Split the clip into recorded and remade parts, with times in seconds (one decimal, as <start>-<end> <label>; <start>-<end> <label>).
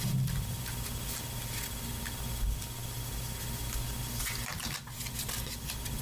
0.0-6.0 recorded